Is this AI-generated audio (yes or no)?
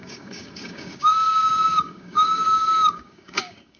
yes